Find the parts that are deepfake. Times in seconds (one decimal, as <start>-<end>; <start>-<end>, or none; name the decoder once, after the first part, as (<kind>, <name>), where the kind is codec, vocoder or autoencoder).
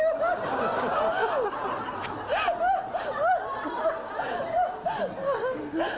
none